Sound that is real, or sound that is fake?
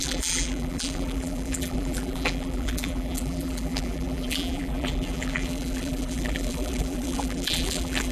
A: fake